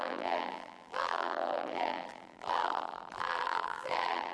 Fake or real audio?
fake